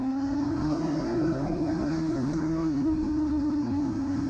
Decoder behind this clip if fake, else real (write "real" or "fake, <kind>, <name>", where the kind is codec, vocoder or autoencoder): fake, codec, SNAC